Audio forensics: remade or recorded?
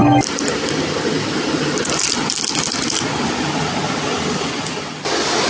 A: recorded